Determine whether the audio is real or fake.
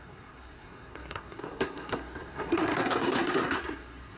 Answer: fake